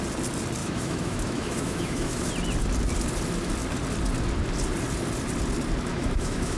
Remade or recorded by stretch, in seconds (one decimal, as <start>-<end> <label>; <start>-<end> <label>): 0.0-0.6 recorded; 0.6-2.3 remade; 2.3-5.9 recorded; 5.9-6.6 remade